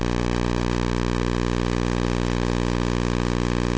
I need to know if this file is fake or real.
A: real